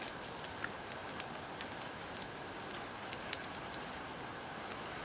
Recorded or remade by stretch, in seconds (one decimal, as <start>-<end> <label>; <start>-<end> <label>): 0.0-5.0 recorded